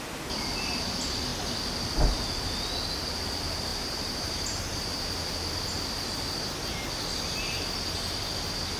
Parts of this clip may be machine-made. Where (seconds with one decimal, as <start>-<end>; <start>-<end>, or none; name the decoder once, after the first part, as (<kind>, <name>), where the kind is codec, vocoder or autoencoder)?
3.7-5.1 (vocoder, BigVGAN v2)